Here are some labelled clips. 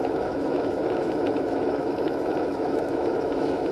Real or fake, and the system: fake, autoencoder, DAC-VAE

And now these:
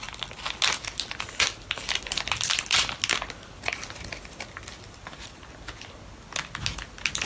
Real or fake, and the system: real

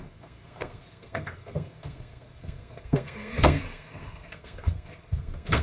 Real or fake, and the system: fake, codec, SNAC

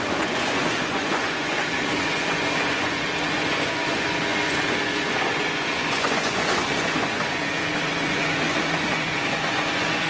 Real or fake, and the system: fake, vocoder, Vocos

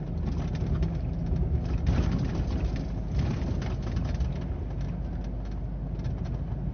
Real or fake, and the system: real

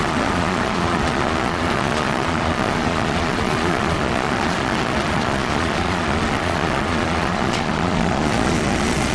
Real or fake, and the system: fake, vocoder, Vocos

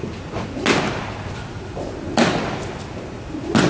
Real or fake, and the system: real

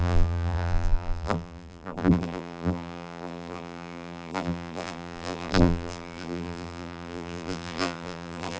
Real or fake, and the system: fake, vocoder, BigVGAN v2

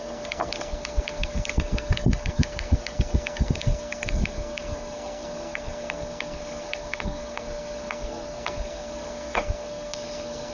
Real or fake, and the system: fake, codec, SNAC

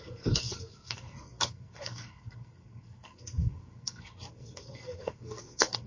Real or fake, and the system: fake, codec, SNAC